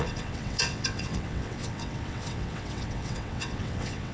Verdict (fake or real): fake